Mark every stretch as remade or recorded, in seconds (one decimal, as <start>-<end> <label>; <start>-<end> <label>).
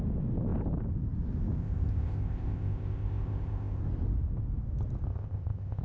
0.0-1.6 recorded; 1.6-3.8 remade; 3.8-5.1 recorded; 5.1-5.8 remade